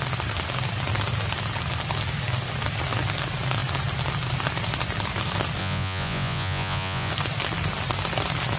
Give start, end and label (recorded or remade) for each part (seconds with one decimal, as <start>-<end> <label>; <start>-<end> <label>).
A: 0.0-5.6 recorded; 5.6-7.1 remade; 7.1-8.6 recorded